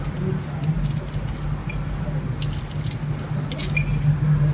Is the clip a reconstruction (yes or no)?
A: no